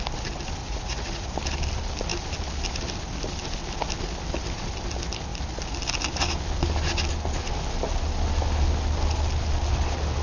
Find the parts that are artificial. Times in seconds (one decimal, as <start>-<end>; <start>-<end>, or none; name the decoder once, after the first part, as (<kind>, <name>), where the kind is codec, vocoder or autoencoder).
0.6-1.3 (vocoder, Vocos)